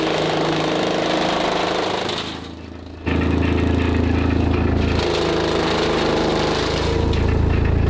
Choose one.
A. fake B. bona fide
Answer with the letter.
B